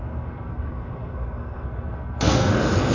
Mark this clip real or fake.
fake